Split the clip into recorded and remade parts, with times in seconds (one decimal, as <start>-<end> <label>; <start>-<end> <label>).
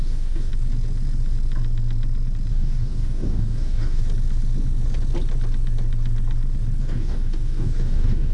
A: 0.0-0.5 remade; 0.5-2.5 recorded; 2.5-4.0 remade; 4.0-6.8 recorded; 6.8-8.3 remade